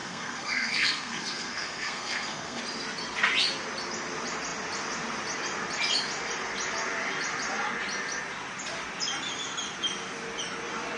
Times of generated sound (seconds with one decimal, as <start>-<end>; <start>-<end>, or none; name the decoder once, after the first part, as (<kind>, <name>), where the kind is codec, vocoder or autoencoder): 0.0-2.6 (codec, SNAC)